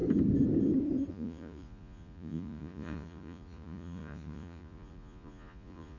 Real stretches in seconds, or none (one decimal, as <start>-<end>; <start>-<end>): 0.0-1.1